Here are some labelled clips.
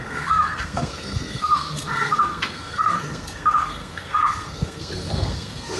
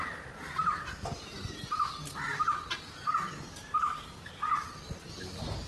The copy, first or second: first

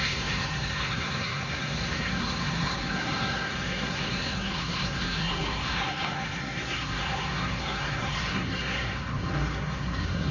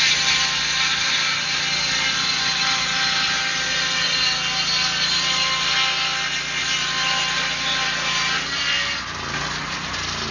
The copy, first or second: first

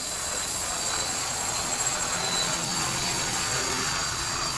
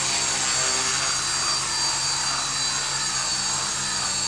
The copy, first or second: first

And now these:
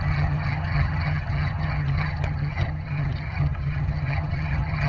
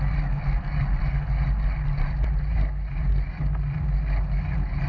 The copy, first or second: first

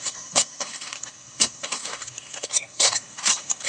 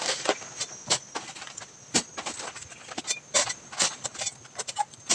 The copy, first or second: first